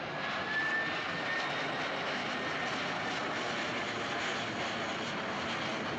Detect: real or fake real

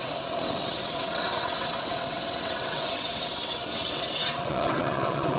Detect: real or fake fake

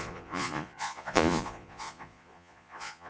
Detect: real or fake fake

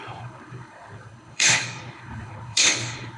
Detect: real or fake fake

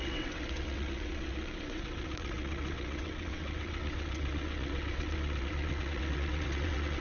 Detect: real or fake fake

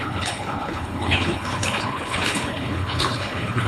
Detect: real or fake fake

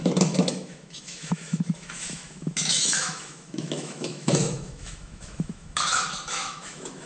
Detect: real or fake fake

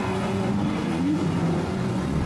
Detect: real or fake fake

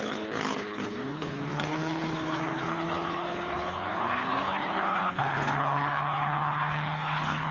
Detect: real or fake fake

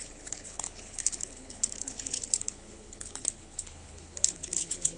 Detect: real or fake fake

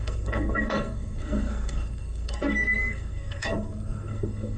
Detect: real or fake fake